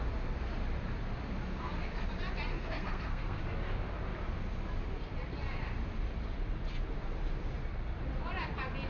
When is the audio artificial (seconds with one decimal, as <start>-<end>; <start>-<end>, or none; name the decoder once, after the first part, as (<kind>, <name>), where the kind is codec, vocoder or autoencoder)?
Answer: 2.5-3.4 (codec, SNAC)